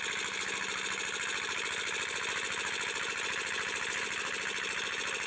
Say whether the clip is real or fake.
real